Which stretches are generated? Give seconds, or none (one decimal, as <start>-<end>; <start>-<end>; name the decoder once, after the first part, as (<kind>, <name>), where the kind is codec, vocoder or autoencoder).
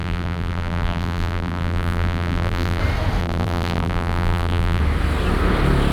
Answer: 0.0-2.8 (vocoder, BigVGAN v2); 3.2-4.8